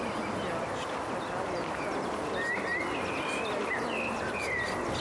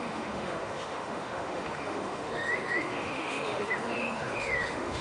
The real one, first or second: first